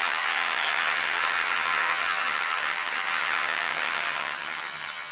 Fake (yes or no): yes